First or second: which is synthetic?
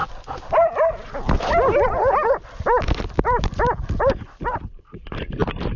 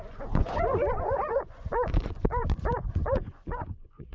second